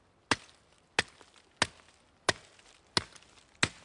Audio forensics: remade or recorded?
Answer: recorded